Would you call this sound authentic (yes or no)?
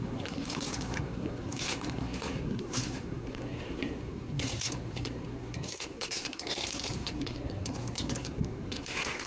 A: no